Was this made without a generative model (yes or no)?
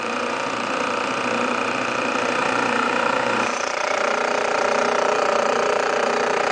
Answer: no